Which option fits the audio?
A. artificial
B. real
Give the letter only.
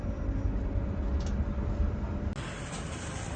B